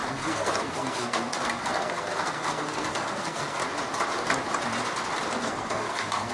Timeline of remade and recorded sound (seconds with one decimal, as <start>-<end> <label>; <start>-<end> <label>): 0.0-3.6 remade; 3.6-5.4 recorded; 5.4-6.3 remade